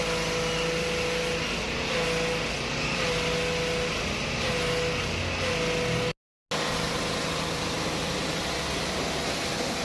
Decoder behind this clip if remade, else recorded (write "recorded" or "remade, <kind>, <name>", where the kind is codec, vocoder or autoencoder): recorded